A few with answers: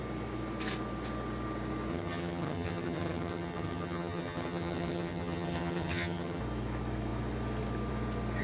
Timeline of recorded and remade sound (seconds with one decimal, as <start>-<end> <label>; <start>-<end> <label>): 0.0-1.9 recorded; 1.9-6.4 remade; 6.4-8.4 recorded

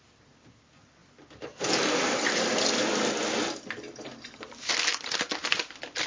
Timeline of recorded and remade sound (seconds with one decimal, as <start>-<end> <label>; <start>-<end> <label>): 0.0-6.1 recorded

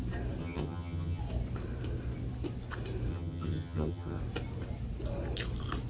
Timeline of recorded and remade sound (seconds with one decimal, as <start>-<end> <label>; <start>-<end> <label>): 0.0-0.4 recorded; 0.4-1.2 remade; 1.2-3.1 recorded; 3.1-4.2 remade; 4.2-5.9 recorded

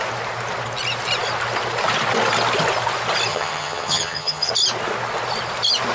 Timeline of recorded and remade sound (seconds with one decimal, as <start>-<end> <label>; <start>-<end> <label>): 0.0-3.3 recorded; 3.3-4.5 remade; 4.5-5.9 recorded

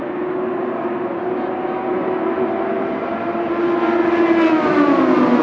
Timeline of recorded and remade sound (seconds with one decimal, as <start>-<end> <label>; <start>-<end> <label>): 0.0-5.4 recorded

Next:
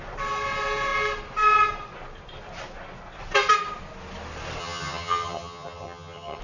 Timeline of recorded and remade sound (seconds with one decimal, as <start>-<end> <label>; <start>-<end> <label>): 0.0-4.6 recorded; 4.6-6.4 remade

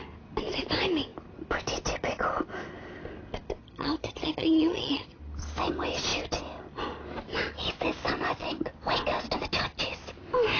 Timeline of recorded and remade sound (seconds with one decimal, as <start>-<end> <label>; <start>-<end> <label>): 0.0-3.6 recorded; 3.6-5.2 remade; 5.2-10.6 recorded

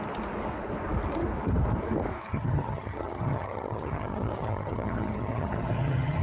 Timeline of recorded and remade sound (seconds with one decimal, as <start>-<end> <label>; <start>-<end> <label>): 0.0-2.3 recorded; 2.3-6.2 remade